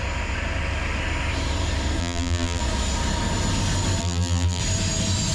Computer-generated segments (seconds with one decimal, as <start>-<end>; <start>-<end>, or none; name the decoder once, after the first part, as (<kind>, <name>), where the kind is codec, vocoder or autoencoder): 2.0-2.6 (vocoder, BigVGAN v2); 4.0-4.6